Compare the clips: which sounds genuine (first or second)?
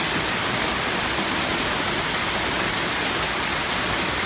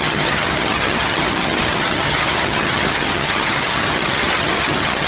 first